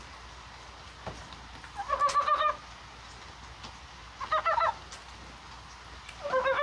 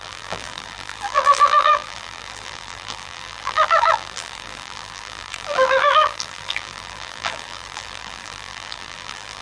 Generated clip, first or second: second